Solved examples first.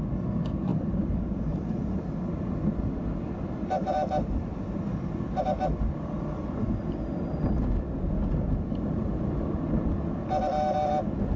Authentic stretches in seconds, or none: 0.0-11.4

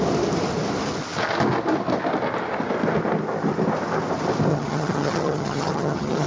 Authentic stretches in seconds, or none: 0.0-4.5

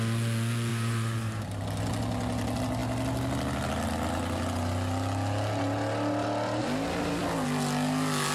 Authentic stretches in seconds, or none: 0.0-0.7; 1.6-8.3

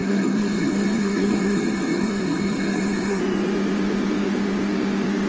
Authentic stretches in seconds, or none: 3.2-5.3